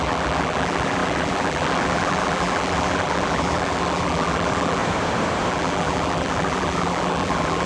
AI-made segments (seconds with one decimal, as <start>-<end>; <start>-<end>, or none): 0.0-4.8; 5.5-7.7